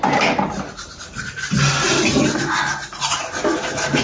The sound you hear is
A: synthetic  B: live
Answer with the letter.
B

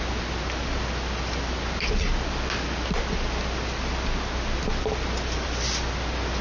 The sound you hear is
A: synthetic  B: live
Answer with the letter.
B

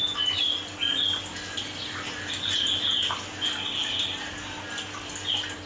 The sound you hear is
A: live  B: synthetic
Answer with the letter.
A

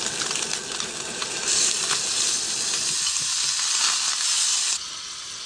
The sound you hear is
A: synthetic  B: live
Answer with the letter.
B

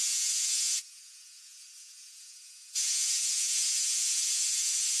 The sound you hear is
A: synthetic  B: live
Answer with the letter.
A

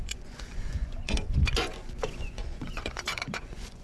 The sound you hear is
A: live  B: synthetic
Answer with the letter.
B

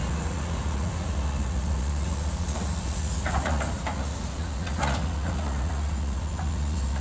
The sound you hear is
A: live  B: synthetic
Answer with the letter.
B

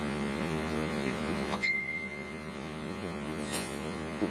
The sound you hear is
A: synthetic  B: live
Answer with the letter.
A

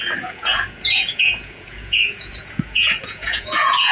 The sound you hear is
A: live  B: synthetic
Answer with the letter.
B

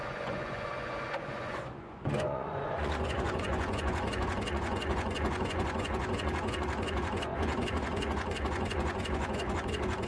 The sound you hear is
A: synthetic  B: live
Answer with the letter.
A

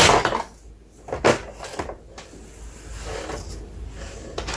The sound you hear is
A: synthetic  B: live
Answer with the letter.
B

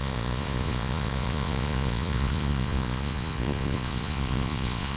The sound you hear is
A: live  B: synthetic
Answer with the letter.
B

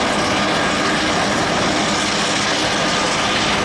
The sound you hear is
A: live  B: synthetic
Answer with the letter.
A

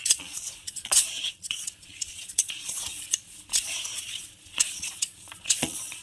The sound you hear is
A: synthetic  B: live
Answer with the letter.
A